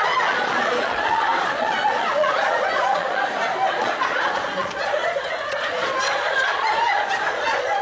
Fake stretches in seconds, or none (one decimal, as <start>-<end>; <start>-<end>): 0.0-3.2; 3.8-7.8